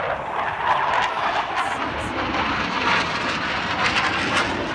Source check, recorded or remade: recorded